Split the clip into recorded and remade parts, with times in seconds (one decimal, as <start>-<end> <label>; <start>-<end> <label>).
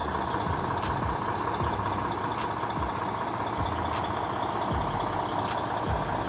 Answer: 0.0-0.6 remade; 0.6-6.3 recorded